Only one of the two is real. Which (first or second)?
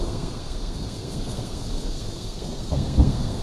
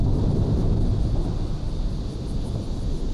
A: second